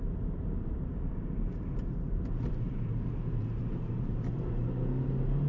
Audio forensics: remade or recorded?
remade